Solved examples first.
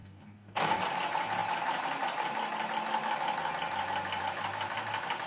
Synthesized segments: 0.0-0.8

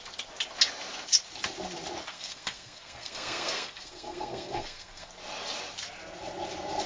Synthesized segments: 2.1-5.1

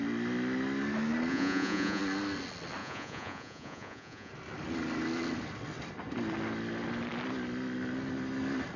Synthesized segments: 1.3-2.0; 2.8-4.3

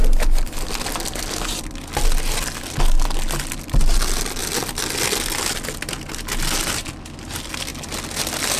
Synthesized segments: none

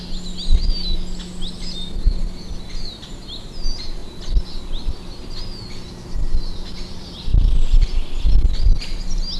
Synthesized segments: 7.3-9.0

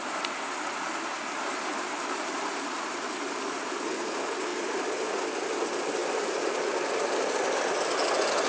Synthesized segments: 1.7-2.3; 6.0-6.5

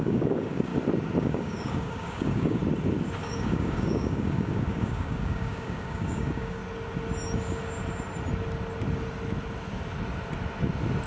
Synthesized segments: 0.0-0.7; 1.2-2.6; 3.2-6.6

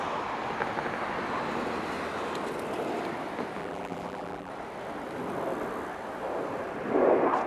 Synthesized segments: 3.6-4.5